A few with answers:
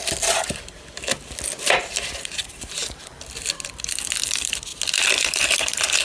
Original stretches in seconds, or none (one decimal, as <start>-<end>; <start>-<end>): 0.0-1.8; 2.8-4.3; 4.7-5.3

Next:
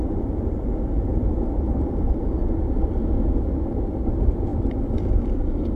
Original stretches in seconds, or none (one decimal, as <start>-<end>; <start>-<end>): 2.2-4.0

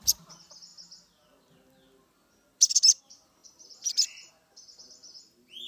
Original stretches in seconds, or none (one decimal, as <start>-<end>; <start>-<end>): 0.0-3.4; 4.3-5.7